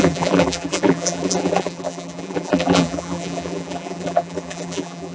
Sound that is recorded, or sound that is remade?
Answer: remade